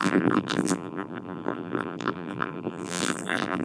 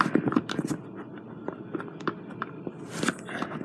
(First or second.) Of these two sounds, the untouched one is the second